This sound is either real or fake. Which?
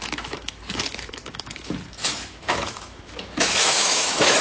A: fake